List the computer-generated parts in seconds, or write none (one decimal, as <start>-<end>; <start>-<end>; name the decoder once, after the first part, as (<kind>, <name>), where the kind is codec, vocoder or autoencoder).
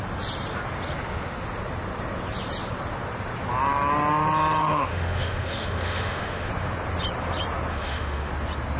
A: 4.6-6.5 (autoencoder, DAC-VAE); 7.7-8.3